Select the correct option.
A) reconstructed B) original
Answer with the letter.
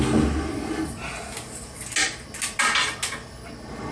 B